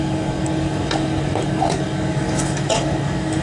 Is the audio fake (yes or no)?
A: yes